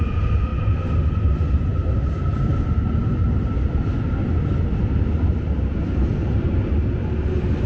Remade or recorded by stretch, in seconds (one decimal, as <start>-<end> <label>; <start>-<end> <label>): 0.0-7.7 recorded